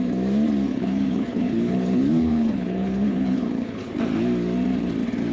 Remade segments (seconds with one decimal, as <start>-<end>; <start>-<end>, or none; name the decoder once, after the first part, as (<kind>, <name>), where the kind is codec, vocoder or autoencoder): 0.7-3.9 (codec, HILCodec)